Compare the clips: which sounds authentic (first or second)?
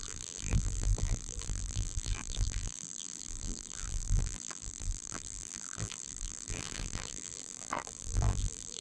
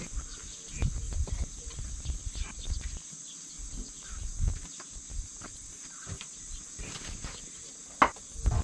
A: second